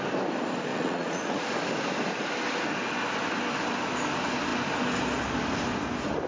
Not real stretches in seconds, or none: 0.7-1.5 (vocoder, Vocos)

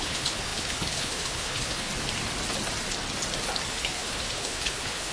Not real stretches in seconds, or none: 0.0-1.9 (codec, HILCodec); 3.7-5.1

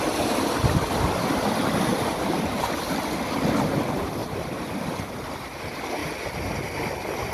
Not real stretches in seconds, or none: 1.9-2.7 (vocoder, BigVGAN v2); 4.2-5.3

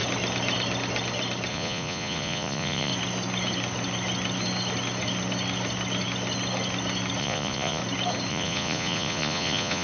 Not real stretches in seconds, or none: 1.5-2.9 (vocoder, Vocos); 7.2-7.8; 8.3-9.8